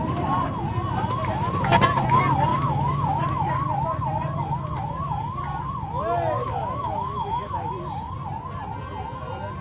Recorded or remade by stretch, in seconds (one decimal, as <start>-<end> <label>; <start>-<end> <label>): 0.0-2.5 recorded; 2.5-3.5 remade; 3.5-6.4 recorded; 6.4-7.7 remade; 7.7-9.6 recorded